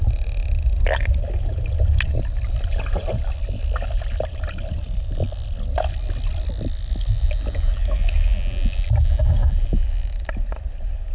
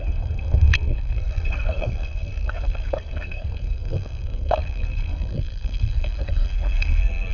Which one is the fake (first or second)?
second